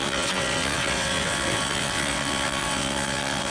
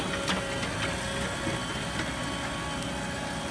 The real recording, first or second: second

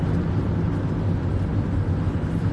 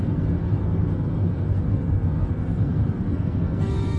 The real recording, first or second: first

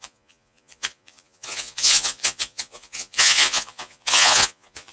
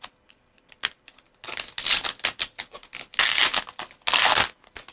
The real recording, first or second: second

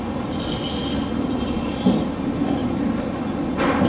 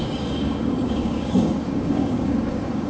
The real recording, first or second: first